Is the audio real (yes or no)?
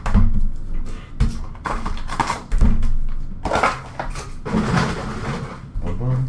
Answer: yes